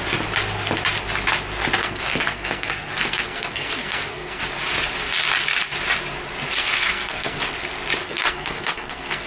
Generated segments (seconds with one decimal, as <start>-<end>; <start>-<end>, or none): 1.8-4.4; 6.6-7.4; 8.0-9.3